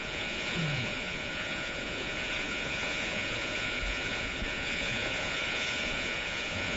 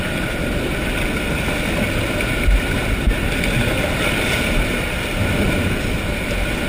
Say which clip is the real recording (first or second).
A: second